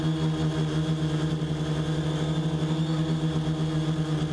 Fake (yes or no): no